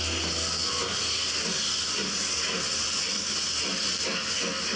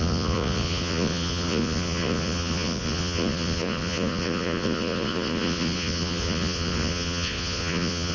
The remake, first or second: second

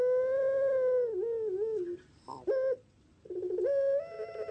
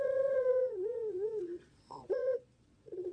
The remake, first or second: second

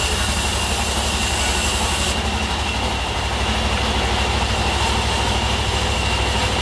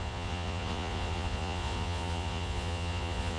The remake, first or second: second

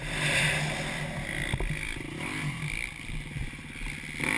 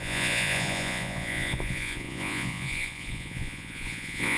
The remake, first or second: second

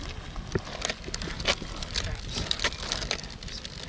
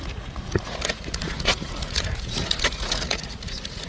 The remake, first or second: second